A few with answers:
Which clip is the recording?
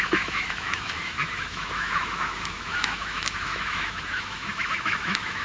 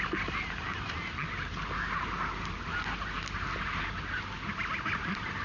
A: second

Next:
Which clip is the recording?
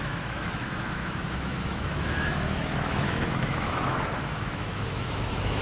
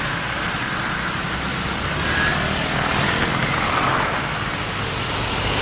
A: second